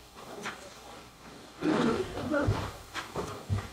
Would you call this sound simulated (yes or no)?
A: yes